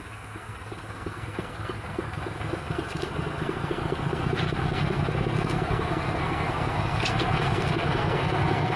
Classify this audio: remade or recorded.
remade